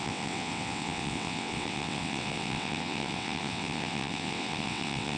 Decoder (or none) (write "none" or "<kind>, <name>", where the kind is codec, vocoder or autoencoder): vocoder, WaveNeXt